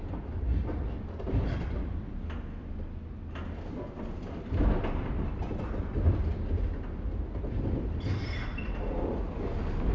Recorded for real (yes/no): yes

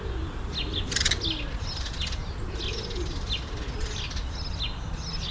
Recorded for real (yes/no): yes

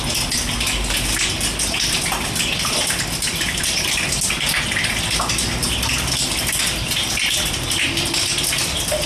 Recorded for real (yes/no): yes